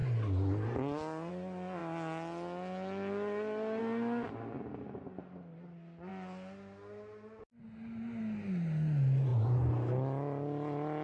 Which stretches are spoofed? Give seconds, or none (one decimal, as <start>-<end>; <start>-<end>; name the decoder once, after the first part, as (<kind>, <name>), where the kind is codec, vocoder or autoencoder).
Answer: none